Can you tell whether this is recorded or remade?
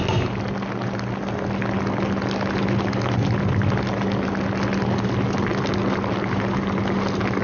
recorded